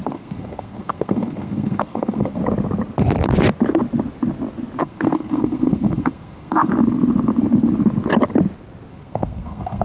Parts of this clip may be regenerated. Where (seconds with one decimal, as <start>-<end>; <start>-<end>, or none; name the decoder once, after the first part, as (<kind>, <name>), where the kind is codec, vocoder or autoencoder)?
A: 0.0-2.4 (codec, SNAC); 4.8-6.7; 8.9-9.8

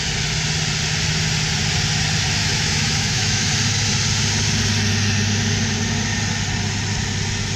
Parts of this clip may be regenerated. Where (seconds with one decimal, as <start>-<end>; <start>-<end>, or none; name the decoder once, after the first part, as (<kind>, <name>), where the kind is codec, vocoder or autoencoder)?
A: 2.4-3.5 (autoencoder, DAC-VAE)

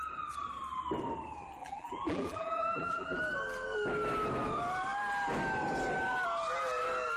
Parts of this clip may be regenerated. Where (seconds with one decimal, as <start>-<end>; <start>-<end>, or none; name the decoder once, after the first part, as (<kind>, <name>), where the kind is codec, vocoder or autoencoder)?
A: 1.6-3.2 (vocoder, BigVGAN v2)